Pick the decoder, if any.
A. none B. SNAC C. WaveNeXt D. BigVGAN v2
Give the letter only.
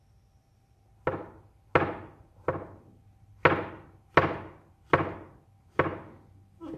A